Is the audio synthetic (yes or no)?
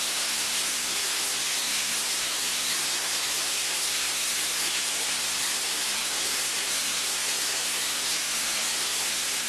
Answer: yes